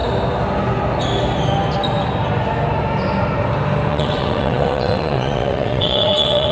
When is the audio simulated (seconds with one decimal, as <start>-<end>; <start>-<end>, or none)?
3.9-6.5